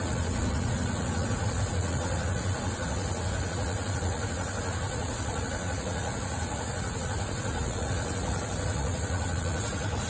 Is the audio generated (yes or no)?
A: yes